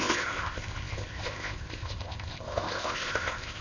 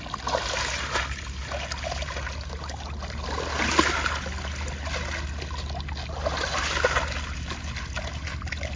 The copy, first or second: first